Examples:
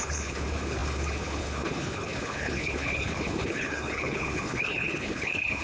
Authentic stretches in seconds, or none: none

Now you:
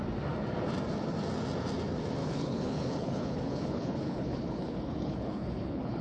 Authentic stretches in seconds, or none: 0.0-2.2

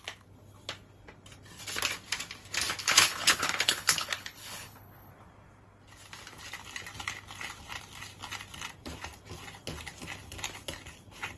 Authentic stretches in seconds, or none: 0.0-2.8; 5.1-11.4

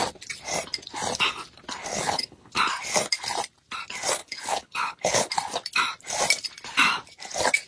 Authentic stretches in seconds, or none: 0.0-1.9; 2.5-4.2; 5.3-7.7